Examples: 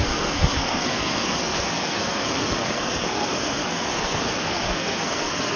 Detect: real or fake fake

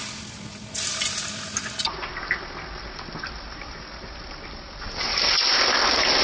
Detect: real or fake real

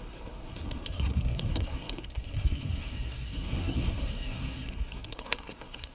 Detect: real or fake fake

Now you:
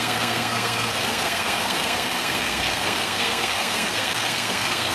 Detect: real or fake fake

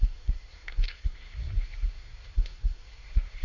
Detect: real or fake fake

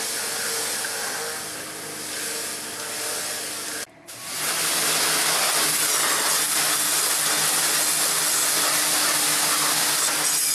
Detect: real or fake real